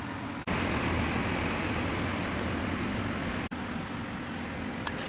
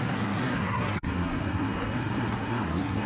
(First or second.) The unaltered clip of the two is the first